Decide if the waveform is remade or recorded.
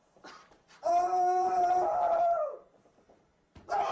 remade